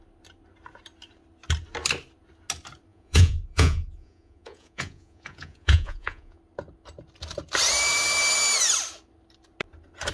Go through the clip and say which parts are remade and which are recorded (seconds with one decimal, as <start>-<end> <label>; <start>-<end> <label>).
0.0-2.9 recorded; 2.9-6.4 remade; 6.4-10.1 recorded

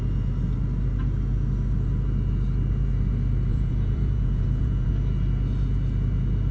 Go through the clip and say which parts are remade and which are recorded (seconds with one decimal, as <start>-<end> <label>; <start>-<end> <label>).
0.0-3.5 recorded; 3.5-4.9 remade; 4.9-6.5 recorded

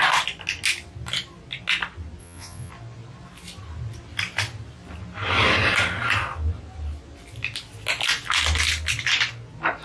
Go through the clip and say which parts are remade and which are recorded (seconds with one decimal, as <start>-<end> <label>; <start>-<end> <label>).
0.0-2.2 recorded; 2.2-2.7 remade; 2.7-9.8 recorded

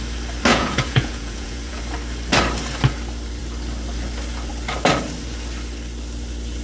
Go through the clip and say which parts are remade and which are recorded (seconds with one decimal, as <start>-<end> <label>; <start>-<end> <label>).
0.0-0.5 recorded; 0.5-1.8 remade; 1.8-6.6 recorded

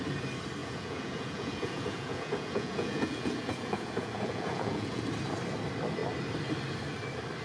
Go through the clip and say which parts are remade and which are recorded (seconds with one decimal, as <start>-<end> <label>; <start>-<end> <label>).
0.0-0.6 recorded; 0.6-5.0 remade; 5.0-7.4 recorded

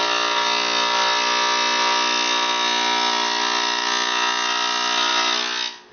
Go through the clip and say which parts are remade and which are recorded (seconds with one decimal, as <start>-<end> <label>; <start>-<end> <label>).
0.0-5.9 recorded

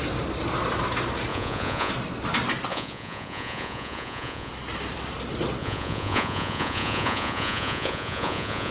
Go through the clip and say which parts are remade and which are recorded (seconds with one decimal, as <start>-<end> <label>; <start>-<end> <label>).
0.0-1.3 recorded; 1.3-1.9 remade; 1.9-2.7 recorded; 2.7-4.5 remade; 4.5-5.6 recorded; 5.6-8.7 remade